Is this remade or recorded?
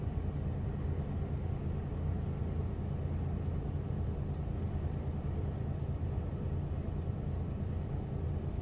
recorded